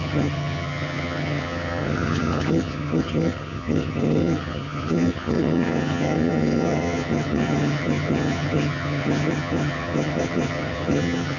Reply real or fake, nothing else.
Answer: fake